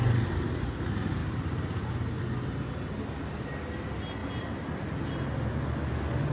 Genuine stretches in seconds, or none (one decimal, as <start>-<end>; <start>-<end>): 0.0-6.3